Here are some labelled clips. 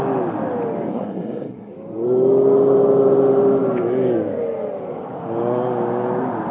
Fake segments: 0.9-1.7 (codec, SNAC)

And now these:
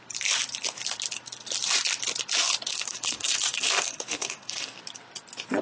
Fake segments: 2.7-4.7 (codec, SNAC)